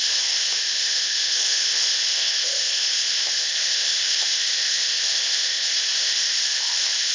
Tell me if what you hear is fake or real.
fake